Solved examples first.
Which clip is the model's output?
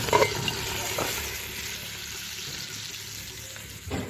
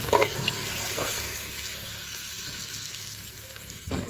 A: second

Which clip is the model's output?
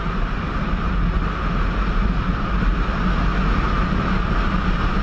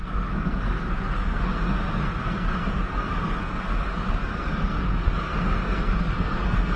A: second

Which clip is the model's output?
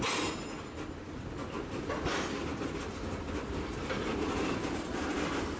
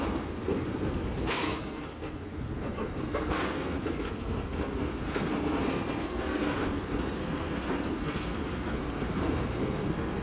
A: second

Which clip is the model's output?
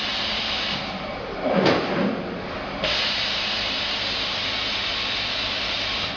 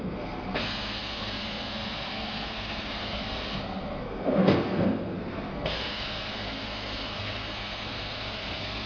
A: second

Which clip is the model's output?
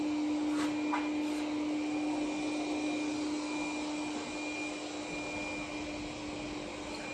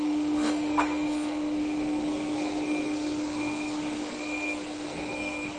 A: second